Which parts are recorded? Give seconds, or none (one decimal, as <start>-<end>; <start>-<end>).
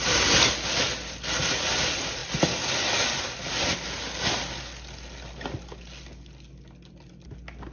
0.0-7.7